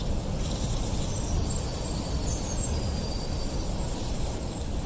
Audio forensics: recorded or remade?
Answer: recorded